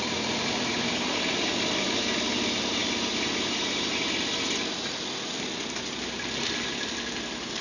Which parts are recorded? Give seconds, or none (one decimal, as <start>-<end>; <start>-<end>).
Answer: 0.0-7.6